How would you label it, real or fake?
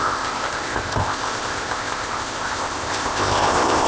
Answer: fake